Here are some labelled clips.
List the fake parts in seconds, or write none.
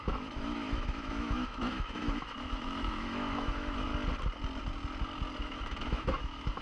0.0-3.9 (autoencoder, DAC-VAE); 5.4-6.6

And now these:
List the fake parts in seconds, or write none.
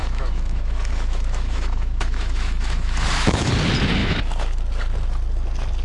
0.0-3.5 (autoencoder, DAC-VAE); 4.0-4.6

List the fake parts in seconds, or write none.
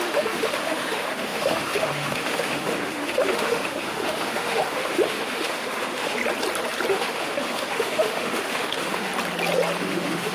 0.0-6.2 (autoencoder, DAC-VAE); 6.9-9.1; 9.8-10.3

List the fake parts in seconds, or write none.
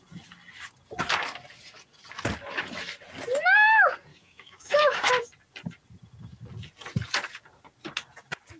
4.1-5.1 (autoencoder, DAC-VAE)